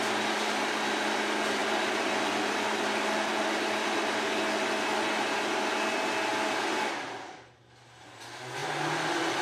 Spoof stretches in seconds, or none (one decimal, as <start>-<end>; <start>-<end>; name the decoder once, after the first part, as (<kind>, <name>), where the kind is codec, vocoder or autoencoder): 1.6-2.5 (vocoder, BigVGAN v2)